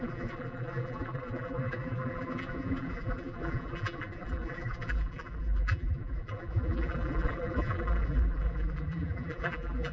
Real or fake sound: fake